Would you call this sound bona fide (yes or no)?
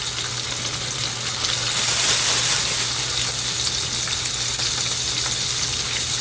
yes